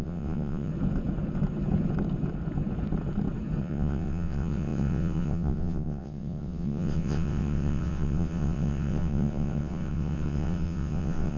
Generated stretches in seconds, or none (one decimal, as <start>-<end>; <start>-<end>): 0.0-0.7; 3.6-11.4